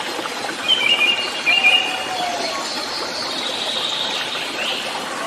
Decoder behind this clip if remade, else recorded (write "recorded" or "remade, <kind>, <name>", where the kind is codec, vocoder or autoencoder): recorded